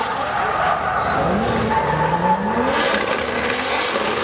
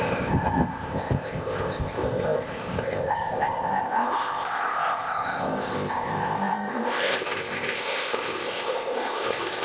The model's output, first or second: second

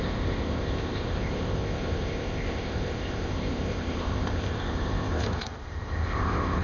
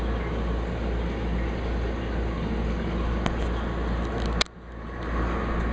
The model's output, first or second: first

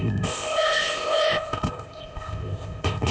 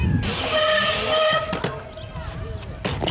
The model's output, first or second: first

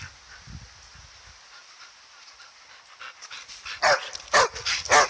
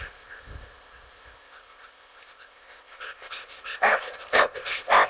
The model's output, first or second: second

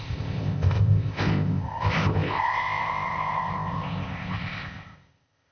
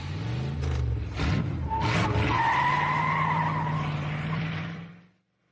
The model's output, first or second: first